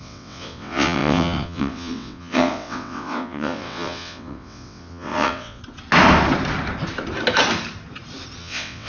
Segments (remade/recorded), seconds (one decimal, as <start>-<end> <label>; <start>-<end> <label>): 0.0-5.6 remade; 5.6-8.4 recorded; 8.4-8.9 remade